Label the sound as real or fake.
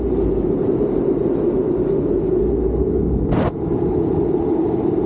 real